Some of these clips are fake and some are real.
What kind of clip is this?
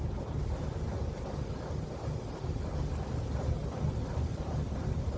real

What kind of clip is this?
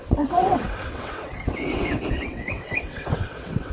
fake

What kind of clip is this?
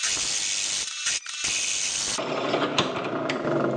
real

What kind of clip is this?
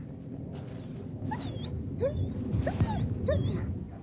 real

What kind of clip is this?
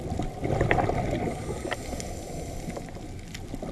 real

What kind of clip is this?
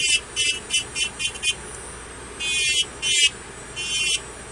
real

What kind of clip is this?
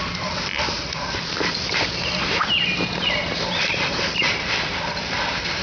fake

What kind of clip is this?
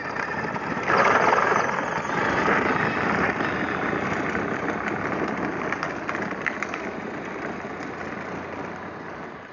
real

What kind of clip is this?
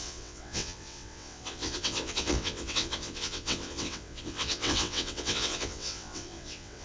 fake